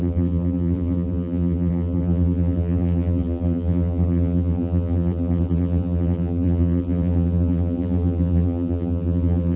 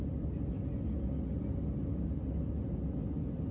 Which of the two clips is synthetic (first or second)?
first